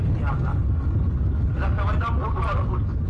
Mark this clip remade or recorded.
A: recorded